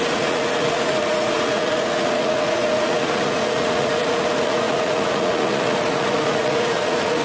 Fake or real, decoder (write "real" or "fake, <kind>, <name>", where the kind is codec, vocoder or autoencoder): fake, vocoder, Vocos